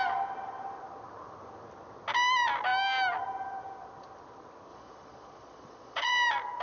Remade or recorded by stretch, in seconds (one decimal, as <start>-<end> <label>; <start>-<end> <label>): 0.0-4.7 recorded; 4.7-6.1 remade; 6.1-6.6 recorded